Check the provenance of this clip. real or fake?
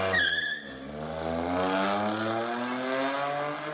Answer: real